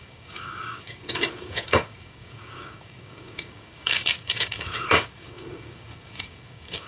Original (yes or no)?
no